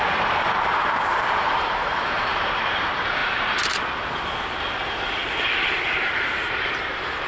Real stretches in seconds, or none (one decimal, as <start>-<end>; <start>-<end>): 5.2-6.0